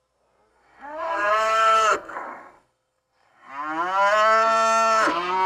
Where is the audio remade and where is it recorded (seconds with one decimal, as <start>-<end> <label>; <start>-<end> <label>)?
0.0-0.5 recorded; 0.5-3.5 remade; 3.5-5.5 recorded